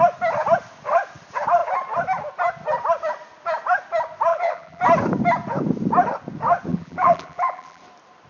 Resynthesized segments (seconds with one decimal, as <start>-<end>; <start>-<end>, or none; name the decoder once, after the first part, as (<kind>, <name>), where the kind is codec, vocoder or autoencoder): 4.3-4.8 (vocoder, BigVGAN v2); 6.7-7.8